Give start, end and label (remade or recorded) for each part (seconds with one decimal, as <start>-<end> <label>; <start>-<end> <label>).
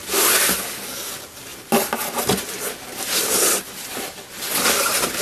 0.0-5.2 recorded